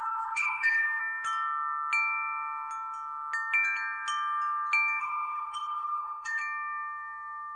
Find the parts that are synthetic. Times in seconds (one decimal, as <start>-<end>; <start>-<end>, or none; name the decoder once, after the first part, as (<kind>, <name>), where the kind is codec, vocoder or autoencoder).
0.0-1.0 (codec, HILCodec); 5.0-6.4